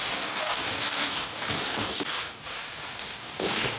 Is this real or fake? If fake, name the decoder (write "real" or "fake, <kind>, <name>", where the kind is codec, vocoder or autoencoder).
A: fake, codec, DAC